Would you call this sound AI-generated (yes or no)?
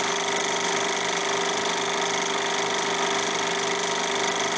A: no